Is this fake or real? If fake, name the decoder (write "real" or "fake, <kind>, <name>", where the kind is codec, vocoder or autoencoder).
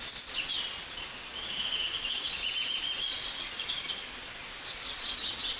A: fake, vocoder, Vocos